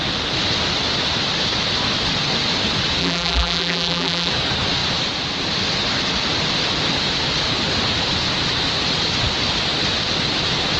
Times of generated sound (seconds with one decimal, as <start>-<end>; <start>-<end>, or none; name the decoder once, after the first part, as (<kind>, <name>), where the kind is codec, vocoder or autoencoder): 3.0-4.3 (vocoder, BigVGAN v2)